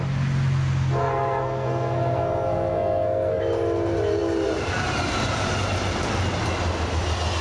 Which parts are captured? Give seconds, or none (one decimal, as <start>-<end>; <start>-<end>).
0.0-1.0; 3.4-7.4